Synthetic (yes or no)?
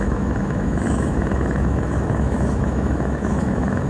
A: yes